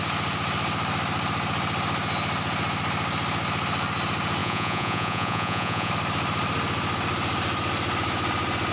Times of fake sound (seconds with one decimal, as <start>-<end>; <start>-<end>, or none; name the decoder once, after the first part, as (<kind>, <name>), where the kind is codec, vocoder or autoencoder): 4.4-5.9 (vocoder, Vocos)